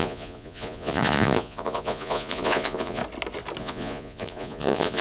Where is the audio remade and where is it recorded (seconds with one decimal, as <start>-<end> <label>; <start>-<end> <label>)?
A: 0.0-3.0 remade; 3.0-3.6 recorded; 3.6-5.0 remade